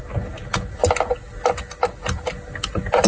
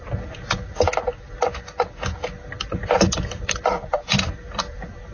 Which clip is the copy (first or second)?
second